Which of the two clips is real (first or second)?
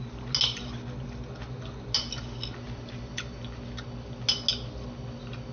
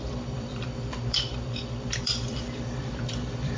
first